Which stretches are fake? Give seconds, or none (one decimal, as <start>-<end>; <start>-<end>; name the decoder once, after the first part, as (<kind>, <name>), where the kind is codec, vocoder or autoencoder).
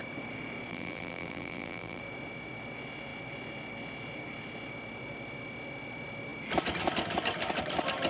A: 0.7-2.0 (vocoder, BigVGAN v2)